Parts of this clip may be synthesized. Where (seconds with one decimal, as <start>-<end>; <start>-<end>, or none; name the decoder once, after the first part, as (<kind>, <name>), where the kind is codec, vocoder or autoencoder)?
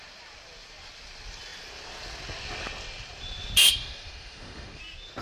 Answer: 3.6-4.8 (autoencoder, DAC-VAE)